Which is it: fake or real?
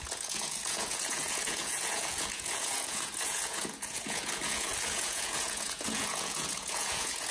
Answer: fake